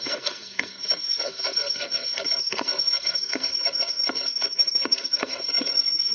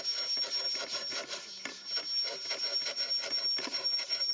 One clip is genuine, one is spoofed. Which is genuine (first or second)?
second